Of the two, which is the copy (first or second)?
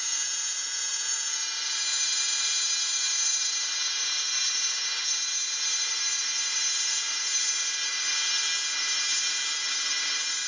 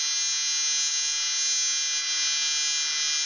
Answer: first